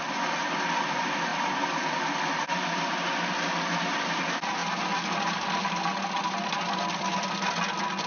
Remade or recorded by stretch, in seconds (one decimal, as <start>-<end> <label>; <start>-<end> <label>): 0.0-8.1 recorded